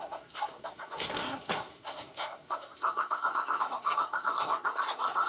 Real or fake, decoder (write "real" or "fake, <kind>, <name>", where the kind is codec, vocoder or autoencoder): fake, codec, SNAC